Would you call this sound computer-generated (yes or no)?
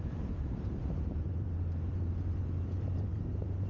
yes